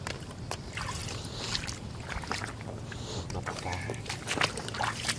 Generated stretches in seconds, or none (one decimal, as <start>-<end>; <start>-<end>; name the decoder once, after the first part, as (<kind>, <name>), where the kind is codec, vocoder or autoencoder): none